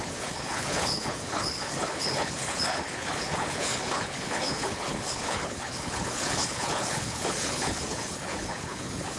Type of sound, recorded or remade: remade